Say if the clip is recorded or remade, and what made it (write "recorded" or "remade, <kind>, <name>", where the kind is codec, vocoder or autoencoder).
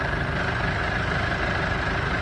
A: recorded